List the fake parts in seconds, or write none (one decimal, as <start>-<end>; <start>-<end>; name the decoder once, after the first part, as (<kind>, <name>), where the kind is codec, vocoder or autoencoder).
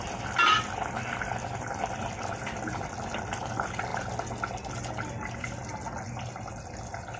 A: none